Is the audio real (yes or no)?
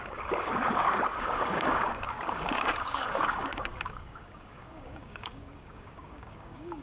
no